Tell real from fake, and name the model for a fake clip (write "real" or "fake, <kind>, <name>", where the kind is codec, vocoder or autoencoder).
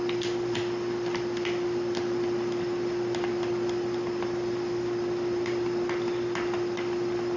real